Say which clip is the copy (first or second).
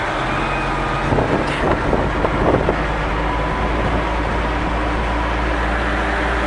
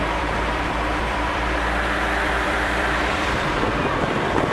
second